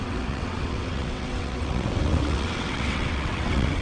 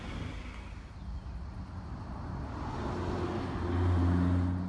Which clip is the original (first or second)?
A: second